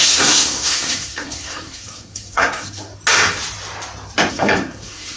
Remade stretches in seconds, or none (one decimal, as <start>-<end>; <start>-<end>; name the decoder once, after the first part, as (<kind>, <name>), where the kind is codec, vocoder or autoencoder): 0.0-2.9 (codec, SNAC); 4.3-5.2